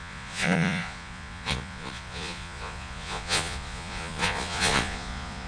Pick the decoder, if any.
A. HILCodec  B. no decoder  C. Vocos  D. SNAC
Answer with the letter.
C